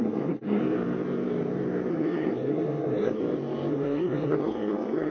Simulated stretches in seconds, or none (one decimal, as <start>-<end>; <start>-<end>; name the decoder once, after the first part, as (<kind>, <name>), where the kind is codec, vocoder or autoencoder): 0.0-0.6 (codec, SNAC); 1.9-3.2; 3.7-5.1